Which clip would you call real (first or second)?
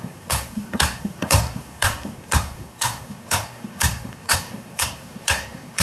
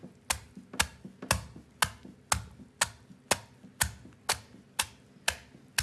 second